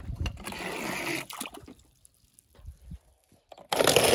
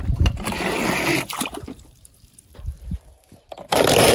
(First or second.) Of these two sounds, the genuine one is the first